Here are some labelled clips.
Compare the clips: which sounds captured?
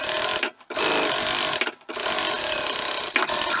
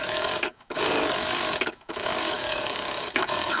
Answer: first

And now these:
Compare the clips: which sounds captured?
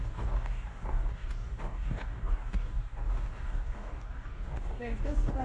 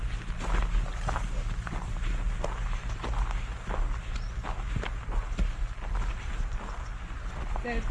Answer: second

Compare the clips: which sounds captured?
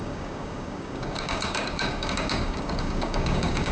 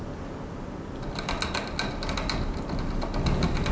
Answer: second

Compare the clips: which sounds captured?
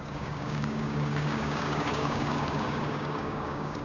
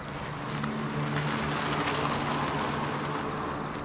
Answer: second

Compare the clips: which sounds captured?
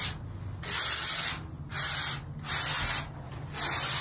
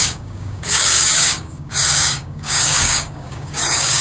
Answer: first